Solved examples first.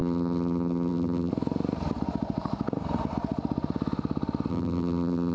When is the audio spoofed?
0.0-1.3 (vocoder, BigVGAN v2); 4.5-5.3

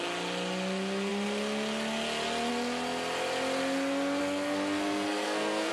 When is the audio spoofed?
4.2-5.7 (codec, SNAC)

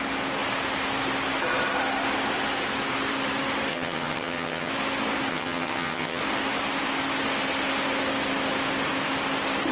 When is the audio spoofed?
3.7-4.7 (vocoder, HiFi-GAN); 5.3-6.2

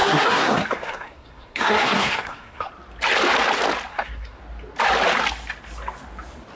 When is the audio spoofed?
0.0-2.7 (codec, SNAC); 3.9-4.4